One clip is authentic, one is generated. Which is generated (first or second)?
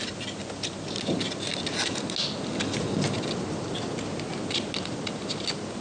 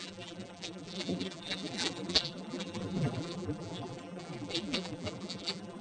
second